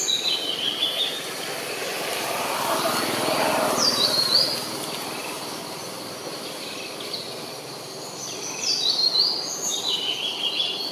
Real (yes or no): yes